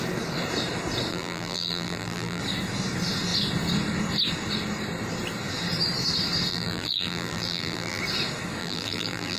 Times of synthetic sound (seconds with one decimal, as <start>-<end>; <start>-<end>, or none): 1.1-2.4; 6.5-8.0; 8.6-9.4